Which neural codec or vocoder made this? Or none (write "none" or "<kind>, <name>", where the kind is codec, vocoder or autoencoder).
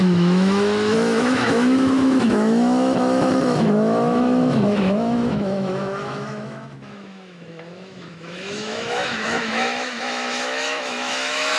autoencoder, DAC-VAE